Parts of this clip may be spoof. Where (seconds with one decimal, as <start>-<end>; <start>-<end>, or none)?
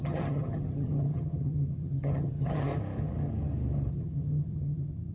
0.0-2.7; 3.9-5.1